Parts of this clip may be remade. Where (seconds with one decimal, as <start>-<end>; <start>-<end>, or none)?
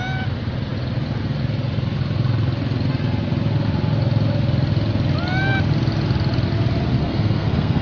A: 7.0-7.8